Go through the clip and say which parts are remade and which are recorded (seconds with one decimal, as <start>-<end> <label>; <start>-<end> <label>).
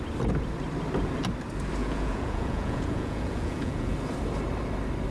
0.0-1.8 recorded; 1.8-3.9 remade; 3.9-5.1 recorded